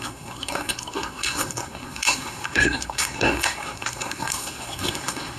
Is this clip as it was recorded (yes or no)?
no